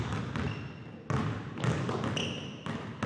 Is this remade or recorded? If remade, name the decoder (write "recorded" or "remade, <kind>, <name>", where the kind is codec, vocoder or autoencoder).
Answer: recorded